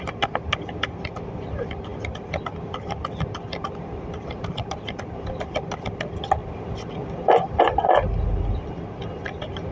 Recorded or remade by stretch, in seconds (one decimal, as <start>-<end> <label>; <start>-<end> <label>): 0.0-9.7 recorded